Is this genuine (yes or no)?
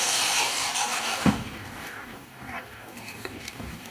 no